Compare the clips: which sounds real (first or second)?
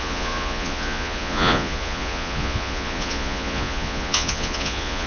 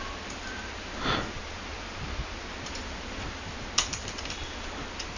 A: second